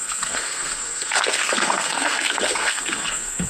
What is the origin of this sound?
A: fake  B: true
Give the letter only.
A